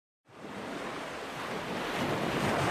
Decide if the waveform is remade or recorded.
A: recorded